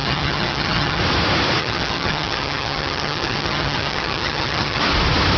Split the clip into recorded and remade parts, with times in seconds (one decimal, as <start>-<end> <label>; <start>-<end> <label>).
0.0-1.0 remade; 1.0-1.6 recorded; 1.6-4.8 remade; 4.8-5.4 recorded